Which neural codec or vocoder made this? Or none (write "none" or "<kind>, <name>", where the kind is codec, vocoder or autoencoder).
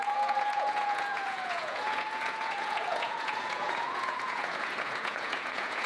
vocoder, Vocos